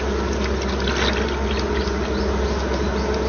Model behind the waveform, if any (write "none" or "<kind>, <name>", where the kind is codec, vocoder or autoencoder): none